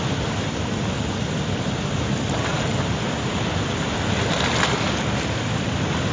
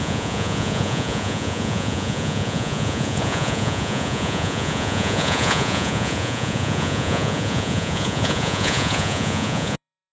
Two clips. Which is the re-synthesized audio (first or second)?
second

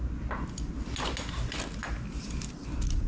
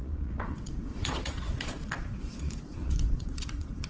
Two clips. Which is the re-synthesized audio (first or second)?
second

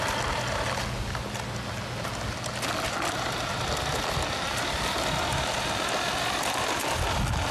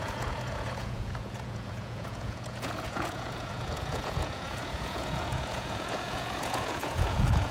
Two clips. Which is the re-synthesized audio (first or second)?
second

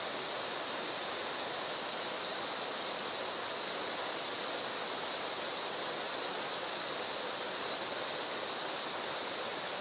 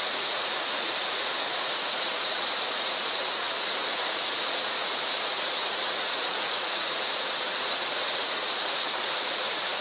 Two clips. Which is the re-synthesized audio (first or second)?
second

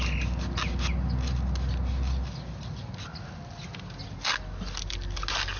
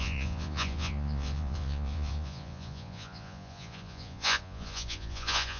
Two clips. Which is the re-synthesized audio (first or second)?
second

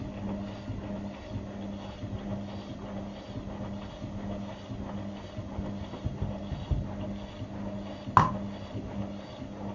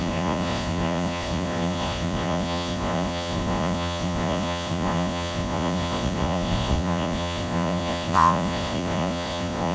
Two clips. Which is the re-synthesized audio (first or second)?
second